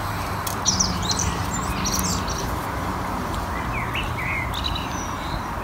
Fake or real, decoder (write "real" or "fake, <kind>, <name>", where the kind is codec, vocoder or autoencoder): real